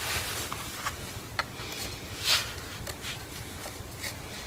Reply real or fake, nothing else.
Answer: real